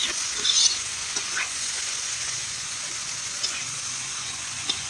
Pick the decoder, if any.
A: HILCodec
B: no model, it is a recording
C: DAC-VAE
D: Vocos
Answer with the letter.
D